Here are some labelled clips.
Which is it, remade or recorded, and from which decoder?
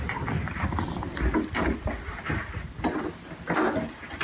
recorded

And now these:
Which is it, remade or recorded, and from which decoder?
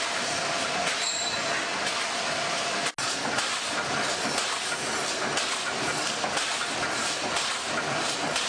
recorded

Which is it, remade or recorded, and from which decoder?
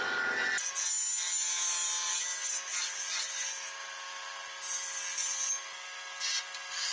recorded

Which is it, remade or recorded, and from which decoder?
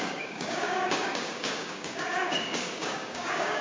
remade, codec, DAC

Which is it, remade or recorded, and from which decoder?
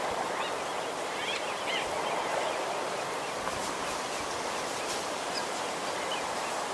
recorded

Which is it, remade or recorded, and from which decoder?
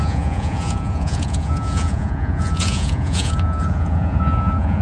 remade, vocoder, Vocos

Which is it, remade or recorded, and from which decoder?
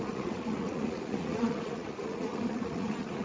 remade, vocoder, Vocos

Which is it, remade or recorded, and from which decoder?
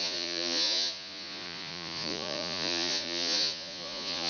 remade, vocoder, Vocos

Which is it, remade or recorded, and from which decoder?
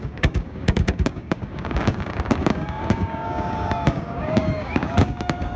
remade, codec, DAC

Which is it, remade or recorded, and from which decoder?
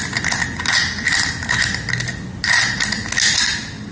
recorded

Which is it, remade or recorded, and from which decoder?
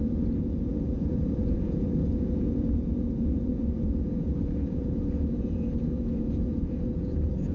remade, vocoder, Vocos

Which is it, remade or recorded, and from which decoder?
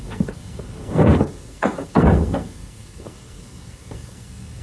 remade, codec, SNAC